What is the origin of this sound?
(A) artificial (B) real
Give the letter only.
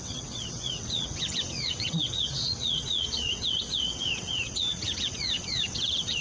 A